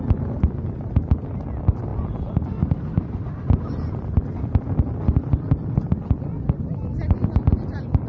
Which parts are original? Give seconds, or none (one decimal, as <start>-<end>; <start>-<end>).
0.0-8.1